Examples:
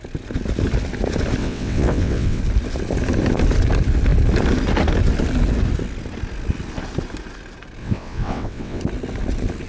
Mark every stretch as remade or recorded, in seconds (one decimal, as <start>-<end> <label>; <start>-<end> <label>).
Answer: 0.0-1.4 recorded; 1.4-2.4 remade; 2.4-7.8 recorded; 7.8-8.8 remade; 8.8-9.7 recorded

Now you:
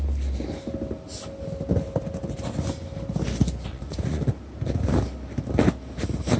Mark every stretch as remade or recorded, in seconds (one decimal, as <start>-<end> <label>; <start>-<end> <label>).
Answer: 0.0-3.7 recorded; 3.7-4.2 remade; 4.2-6.4 recorded

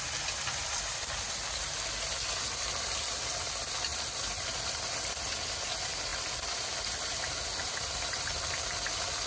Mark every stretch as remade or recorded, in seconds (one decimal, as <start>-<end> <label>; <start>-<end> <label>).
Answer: 0.0-0.5 recorded; 0.5-1.3 remade; 1.3-6.1 recorded; 6.1-6.9 remade; 6.9-9.3 recorded

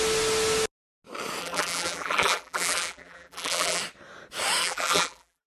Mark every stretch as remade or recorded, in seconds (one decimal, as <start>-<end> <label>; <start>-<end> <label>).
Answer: 0.0-1.4 recorded; 1.4-3.8 remade; 3.8-4.6 recorded; 4.6-5.5 remade

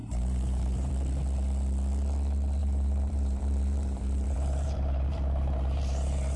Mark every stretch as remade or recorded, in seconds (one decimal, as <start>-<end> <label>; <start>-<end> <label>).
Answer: 0.0-0.9 remade; 0.9-2.6 recorded; 2.6-6.4 remade

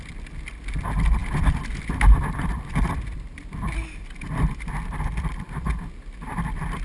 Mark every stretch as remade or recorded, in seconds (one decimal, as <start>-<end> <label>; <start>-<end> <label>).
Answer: 0.0-1.2 recorded; 1.2-5.3 remade; 5.3-6.8 recorded